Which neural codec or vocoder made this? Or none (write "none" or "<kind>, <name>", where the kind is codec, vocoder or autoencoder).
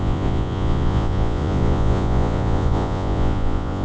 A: vocoder, Vocos